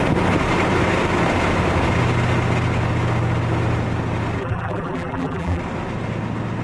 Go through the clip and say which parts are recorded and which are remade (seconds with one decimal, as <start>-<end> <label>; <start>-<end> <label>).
0.0-4.4 recorded; 4.4-5.6 remade; 5.6-6.6 recorded